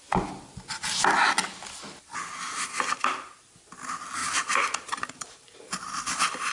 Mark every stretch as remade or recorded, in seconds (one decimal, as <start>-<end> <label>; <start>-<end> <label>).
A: 0.0-4.2 recorded; 4.2-6.5 remade